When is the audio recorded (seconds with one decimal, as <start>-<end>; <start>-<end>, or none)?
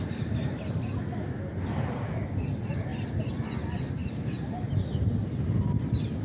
0.0-1.5; 2.2-4.0; 5.3-6.2